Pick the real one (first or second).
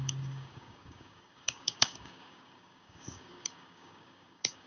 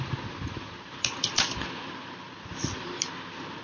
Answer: second